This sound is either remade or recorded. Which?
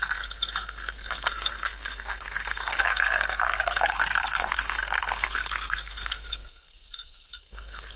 remade